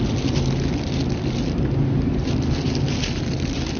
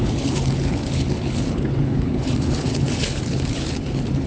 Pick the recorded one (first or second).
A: first